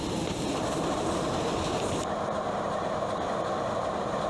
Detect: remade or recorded remade